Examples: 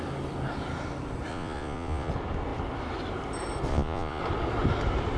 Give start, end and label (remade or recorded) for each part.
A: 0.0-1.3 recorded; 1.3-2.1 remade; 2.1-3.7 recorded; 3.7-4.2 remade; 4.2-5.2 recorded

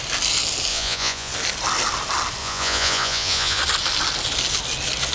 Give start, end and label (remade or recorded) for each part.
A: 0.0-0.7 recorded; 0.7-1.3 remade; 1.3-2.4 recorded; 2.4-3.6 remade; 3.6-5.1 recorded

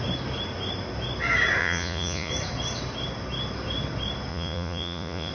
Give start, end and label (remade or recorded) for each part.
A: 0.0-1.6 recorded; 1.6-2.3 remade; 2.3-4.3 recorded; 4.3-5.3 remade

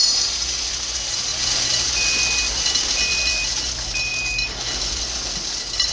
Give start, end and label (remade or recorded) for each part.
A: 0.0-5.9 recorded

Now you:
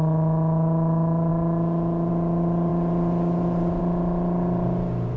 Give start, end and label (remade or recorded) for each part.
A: 0.0-5.2 recorded